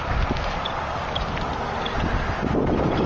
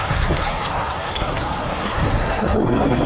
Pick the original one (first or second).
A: first